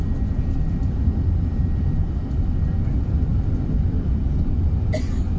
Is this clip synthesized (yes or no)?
no